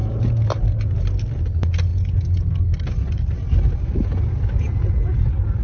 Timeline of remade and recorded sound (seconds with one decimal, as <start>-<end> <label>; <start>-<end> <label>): 0.0-5.6 recorded